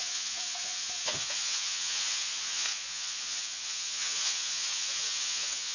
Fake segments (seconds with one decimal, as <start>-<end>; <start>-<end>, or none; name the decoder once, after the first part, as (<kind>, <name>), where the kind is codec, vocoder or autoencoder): 0.0-5.7 (vocoder, Vocos)